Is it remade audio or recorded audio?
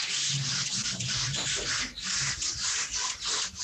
recorded